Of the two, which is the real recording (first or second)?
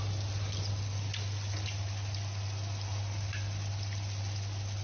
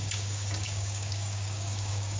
first